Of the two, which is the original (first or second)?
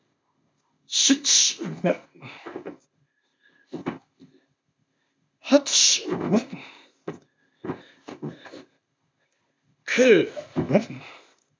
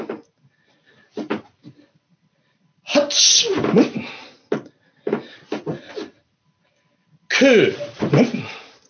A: second